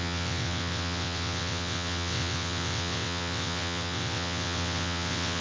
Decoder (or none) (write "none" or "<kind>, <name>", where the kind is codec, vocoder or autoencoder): vocoder, WaveNeXt